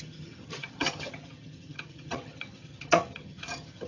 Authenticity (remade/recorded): remade